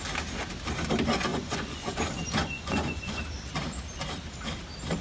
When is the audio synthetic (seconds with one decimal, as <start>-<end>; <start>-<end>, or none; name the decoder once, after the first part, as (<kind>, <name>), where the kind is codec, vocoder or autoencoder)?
1.3-2.0 (vocoder, Vocos); 2.4-3.2